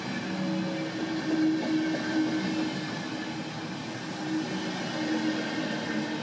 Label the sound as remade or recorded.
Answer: recorded